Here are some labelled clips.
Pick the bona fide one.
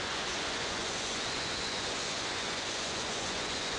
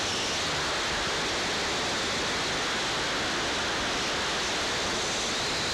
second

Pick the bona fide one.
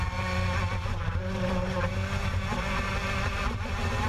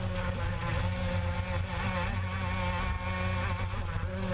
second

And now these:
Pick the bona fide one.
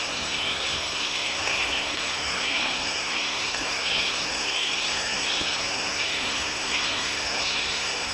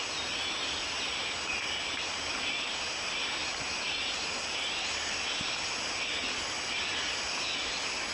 second